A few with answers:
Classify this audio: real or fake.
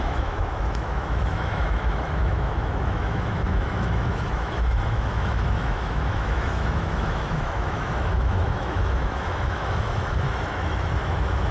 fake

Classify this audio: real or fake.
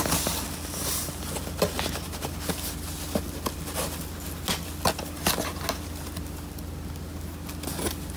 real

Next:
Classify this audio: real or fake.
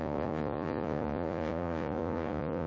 fake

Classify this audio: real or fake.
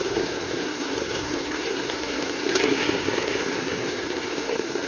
fake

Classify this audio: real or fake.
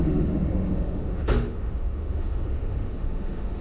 fake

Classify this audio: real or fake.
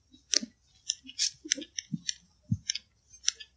real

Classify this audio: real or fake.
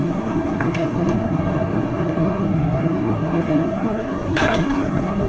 fake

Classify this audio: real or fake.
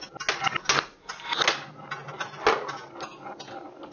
real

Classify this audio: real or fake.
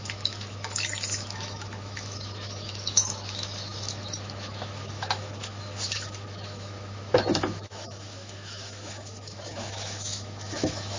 fake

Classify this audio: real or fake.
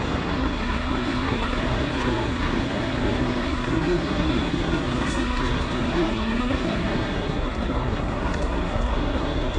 fake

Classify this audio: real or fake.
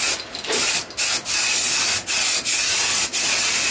real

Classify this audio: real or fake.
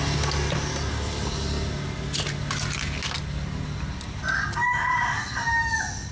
real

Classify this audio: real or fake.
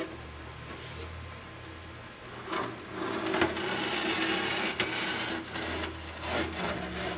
real